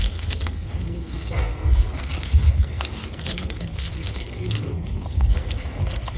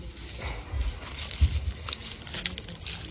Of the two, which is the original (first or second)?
second